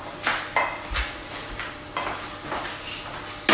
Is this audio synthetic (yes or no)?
no